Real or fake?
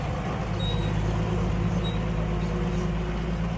real